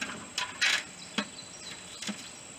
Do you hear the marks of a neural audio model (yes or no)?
no